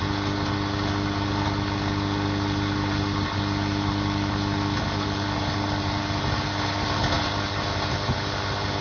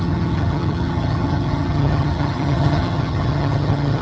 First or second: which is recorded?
first